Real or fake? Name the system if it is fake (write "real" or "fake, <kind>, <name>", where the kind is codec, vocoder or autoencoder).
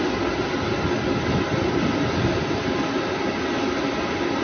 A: real